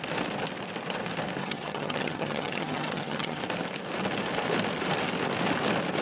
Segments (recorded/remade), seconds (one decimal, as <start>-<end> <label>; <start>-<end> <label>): 0.0-1.4 recorded; 1.4-3.4 remade; 3.4-6.0 recorded